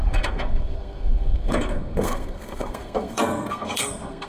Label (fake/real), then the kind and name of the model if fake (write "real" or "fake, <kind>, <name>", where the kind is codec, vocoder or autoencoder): fake, codec, SNAC